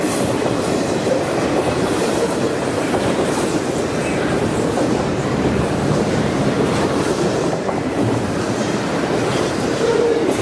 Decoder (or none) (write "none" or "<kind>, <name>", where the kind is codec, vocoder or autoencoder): vocoder, BigVGAN v2